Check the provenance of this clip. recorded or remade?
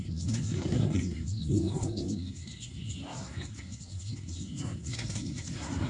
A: remade